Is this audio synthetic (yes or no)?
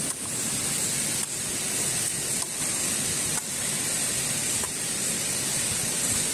no